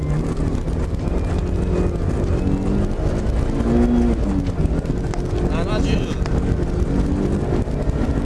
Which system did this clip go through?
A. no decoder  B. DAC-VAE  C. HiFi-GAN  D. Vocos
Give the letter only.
A